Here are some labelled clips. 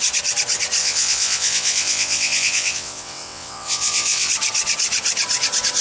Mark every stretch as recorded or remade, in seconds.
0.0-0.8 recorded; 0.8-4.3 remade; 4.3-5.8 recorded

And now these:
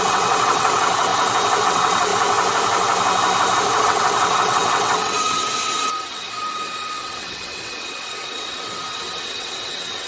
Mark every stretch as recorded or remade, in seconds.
0.0-1.1 remade; 1.1-1.6 recorded; 1.6-2.1 remade; 2.1-3.8 recorded; 3.8-10.1 remade

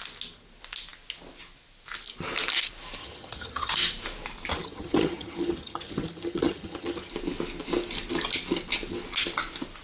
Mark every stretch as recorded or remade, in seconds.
0.0-3.0 recorded; 3.0-3.7 remade; 3.7-4.5 recorded; 4.5-7.1 remade; 7.1-9.8 recorded

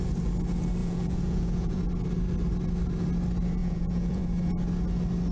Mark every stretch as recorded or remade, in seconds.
0.0-0.8 recorded; 0.8-1.8 remade; 1.8-3.6 recorded; 3.6-4.2 remade; 4.2-5.3 recorded

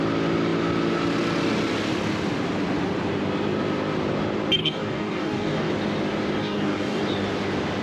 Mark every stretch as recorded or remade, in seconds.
0.0-4.6 recorded; 4.6-5.7 remade; 5.7-6.4 recorded; 6.4-7.0 remade; 7.0-7.8 recorded

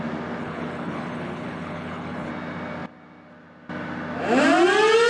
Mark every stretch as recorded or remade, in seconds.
0.0-0.4 recorded; 0.4-2.3 remade; 2.3-5.1 recorded

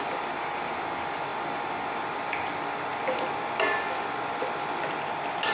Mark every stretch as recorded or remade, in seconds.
0.0-5.5 recorded

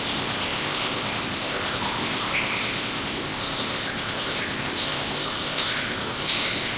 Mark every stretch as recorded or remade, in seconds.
0.0-6.8 remade